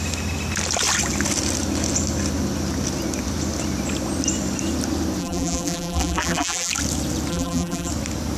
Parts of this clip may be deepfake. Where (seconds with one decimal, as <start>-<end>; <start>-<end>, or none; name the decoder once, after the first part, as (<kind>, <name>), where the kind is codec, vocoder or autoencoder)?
5.2-6.7 (vocoder, BigVGAN v2); 7.3-7.9

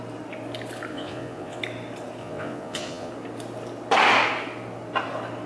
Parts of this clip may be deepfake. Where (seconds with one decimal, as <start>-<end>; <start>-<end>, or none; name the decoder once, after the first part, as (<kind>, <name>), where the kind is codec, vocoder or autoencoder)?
0.9-1.6 (vocoder, Vocos); 2.2-3.1

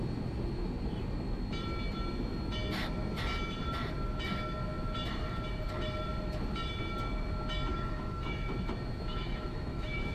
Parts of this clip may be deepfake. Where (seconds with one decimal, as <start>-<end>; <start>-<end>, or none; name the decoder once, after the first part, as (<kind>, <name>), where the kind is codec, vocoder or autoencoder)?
7.7-8.5 (autoencoder, DAC-VAE); 9.1-10.1

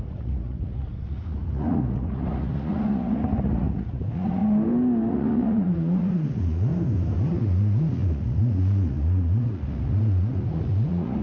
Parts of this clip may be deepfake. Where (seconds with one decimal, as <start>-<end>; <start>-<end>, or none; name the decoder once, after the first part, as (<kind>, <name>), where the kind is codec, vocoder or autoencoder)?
0.0-4.4 (vocoder, Vocos); 5.1-6.7; 7.3-11.2

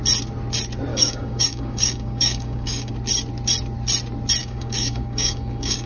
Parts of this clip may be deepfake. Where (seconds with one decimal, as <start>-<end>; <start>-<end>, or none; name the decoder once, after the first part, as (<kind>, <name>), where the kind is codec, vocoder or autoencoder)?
0.9-2.9 (codec, DAC); 4.4-5.9

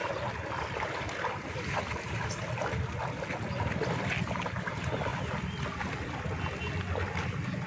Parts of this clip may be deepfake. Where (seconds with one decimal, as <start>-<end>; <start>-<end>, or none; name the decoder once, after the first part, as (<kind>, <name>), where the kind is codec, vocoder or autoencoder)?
none

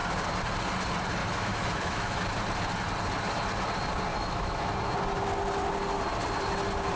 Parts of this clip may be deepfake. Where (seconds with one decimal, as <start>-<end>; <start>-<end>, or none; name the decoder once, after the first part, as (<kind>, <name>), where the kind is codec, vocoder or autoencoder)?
1.2-2.2 (autoencoder, DAC-VAE); 4.1-4.7